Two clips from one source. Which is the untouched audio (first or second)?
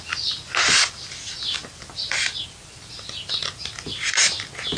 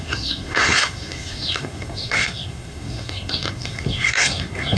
first